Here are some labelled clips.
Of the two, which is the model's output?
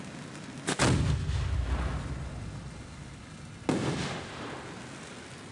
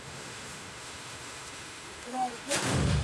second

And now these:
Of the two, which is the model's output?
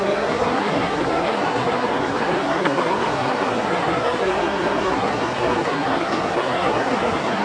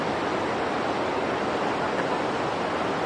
first